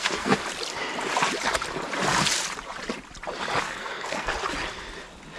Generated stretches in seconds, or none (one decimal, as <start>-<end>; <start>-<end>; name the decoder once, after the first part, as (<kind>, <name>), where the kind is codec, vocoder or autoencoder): 0.0-0.4 (codec, SNAC); 3.6-4.3